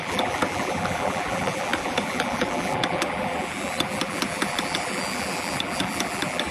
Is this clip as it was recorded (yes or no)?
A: no